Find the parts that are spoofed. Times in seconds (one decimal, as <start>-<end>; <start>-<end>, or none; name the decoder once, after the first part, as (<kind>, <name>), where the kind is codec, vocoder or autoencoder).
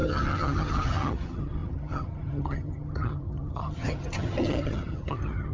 0.0-5.5 (vocoder, HiFi-GAN)